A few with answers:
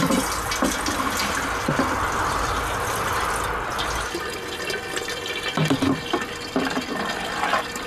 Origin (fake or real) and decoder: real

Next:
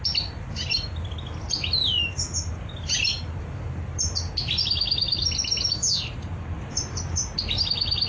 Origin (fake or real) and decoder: real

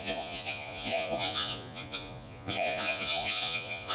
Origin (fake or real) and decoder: fake, vocoder, Vocos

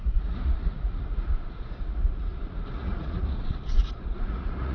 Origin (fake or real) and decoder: fake, vocoder, Vocos